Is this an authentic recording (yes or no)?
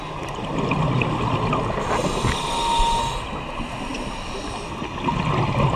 yes